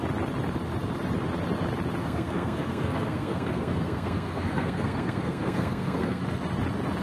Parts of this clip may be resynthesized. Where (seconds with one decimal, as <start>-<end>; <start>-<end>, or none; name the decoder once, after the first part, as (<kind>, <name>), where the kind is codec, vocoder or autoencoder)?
2.0-6.2 (codec, SNAC)